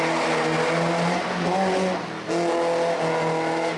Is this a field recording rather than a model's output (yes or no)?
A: yes